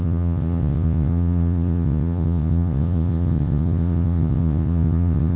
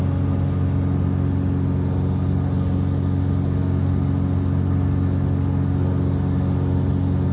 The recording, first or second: second